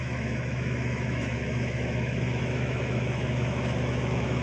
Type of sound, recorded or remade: remade